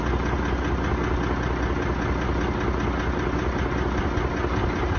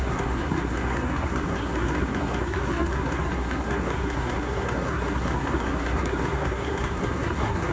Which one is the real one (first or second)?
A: first